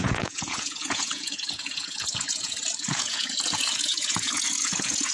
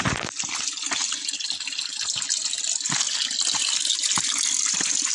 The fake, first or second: first